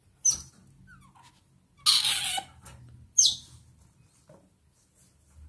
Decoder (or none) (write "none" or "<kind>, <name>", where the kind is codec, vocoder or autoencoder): none